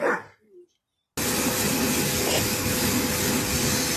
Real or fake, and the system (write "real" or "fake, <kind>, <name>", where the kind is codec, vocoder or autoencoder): real